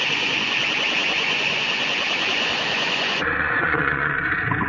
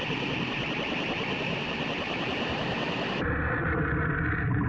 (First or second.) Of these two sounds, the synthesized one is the first